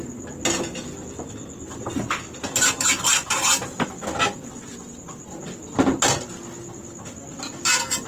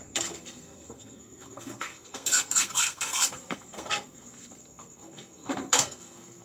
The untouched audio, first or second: first